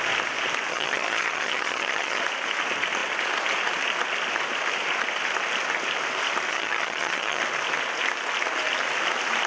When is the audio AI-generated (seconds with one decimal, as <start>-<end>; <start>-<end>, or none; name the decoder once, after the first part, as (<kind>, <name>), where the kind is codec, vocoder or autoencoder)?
0.7-2.2 (vocoder, HiFi-GAN); 6.5-7.4